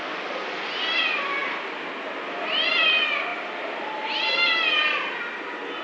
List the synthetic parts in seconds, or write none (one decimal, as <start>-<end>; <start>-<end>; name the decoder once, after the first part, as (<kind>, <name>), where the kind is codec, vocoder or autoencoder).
none